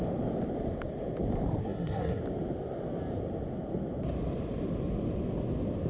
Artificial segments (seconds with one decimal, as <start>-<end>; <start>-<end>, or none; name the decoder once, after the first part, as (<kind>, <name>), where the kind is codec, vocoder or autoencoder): 1.6-2.2 (codec, SNAC)